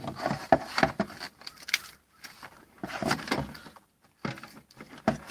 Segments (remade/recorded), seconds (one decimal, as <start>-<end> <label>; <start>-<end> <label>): 0.0-1.5 recorded; 1.5-4.3 remade; 4.3-5.3 recorded